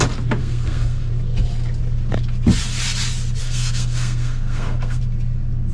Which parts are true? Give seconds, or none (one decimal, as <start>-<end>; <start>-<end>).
0.0-0.4; 1.1-3.4; 5.0-5.7